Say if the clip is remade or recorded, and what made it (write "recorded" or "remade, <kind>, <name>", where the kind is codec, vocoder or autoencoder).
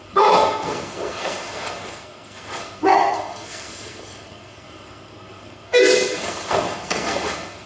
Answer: remade, codec, SNAC